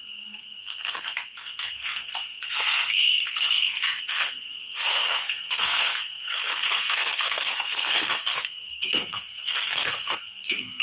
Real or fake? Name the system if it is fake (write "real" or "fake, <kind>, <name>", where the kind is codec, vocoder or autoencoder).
fake, codec, SNAC